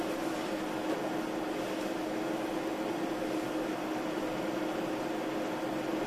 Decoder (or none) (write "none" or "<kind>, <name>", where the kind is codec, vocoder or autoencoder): none